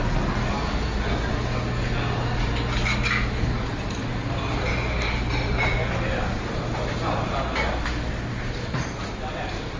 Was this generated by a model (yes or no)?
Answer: no